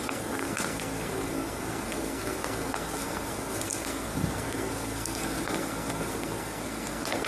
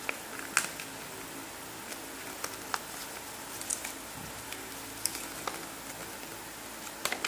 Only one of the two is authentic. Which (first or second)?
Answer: second